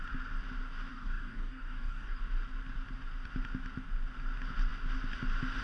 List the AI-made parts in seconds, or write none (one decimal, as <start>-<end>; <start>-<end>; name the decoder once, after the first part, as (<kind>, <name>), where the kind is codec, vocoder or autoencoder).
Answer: 0.9-2.2 (codec, DAC)

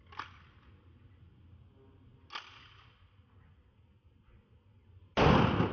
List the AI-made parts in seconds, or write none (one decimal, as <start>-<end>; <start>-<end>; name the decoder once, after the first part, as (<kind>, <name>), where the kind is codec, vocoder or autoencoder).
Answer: none

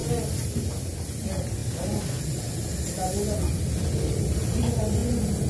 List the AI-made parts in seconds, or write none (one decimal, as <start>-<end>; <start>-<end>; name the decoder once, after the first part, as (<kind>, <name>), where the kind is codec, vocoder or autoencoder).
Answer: none

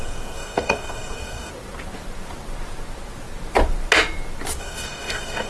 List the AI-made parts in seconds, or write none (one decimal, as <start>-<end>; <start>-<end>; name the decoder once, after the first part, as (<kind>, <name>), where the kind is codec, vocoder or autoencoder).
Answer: 0.0-1.5 (codec, DAC); 4.6-5.5

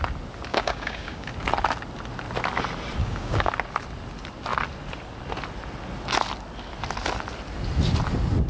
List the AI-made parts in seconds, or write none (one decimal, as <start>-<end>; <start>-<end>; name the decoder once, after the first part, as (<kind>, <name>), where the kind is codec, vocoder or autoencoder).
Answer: 0.5-1.3 (codec, DAC); 3.0-3.5

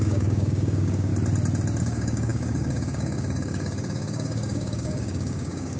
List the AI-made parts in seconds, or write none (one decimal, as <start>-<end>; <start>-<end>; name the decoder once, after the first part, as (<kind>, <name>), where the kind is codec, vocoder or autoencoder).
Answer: 0.0-1.1 (codec, DAC); 1.8-5.8